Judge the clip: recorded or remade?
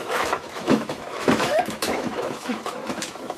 remade